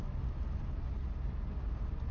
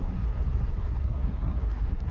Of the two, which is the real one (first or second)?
first